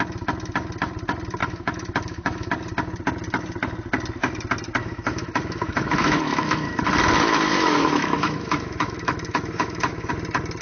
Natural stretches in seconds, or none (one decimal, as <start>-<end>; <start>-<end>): 0.0-1.4; 2.5-4.8; 6.8-7.5; 10.1-10.6